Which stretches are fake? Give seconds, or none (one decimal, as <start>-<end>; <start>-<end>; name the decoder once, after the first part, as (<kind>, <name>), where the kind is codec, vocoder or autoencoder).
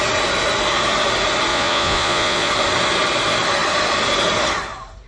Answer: 1.5-2.5 (vocoder, Vocos)